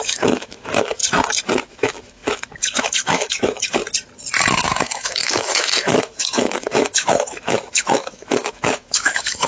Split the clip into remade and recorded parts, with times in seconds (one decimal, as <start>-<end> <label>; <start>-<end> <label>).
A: 0.0-1.0 remade; 1.0-1.6 recorded; 1.6-3.8 remade; 3.8-4.5 recorded; 4.5-9.5 remade

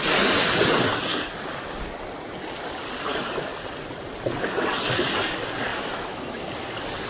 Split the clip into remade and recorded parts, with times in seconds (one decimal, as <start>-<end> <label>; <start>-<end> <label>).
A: 0.0-5.7 recorded; 5.7-6.4 remade; 6.4-7.1 recorded

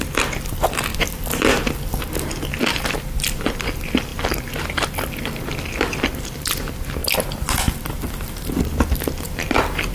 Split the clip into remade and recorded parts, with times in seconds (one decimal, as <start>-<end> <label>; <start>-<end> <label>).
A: 0.0-0.9 recorded; 0.9-2.0 remade; 2.0-7.0 recorded; 7.0-8.3 remade; 8.3-9.9 recorded